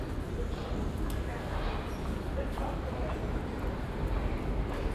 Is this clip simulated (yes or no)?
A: no